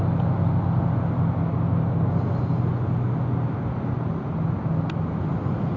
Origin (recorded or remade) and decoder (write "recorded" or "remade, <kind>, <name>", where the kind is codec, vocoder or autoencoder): recorded